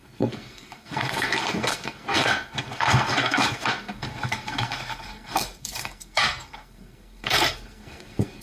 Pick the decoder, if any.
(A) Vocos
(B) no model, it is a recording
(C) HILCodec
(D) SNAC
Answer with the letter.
D